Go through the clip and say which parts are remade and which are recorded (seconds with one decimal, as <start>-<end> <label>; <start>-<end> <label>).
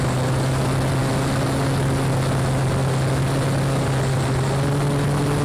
0.0-5.4 recorded